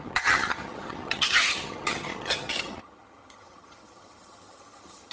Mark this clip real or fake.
fake